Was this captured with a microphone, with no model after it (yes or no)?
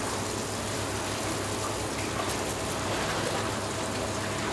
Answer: yes